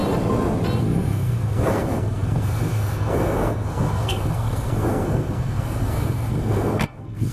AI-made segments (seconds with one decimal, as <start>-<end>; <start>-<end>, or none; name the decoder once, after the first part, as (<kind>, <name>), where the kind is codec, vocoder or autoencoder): 0.8-7.3 (codec, SNAC)